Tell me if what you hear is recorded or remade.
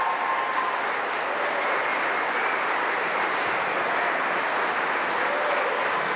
recorded